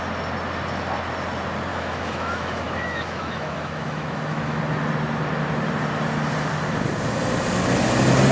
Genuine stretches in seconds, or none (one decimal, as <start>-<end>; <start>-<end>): 0.0-1.7; 4.6-8.3